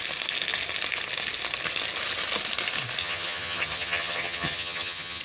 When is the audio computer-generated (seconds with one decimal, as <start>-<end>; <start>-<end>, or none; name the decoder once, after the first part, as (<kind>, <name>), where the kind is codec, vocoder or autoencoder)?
3.0-5.2 (vocoder, HiFi-GAN)